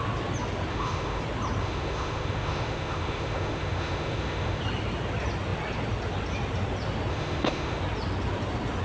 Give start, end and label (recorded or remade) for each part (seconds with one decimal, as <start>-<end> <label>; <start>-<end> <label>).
0.0-0.7 recorded; 0.7-1.2 remade; 1.2-1.6 recorded; 1.6-4.6 remade; 4.6-7.1 recorded; 7.1-7.8 remade; 7.8-8.8 recorded